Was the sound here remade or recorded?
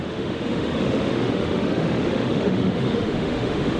remade